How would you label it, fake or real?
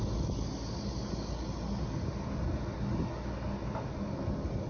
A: real